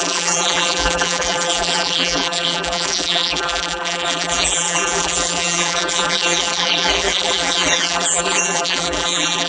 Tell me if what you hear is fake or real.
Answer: fake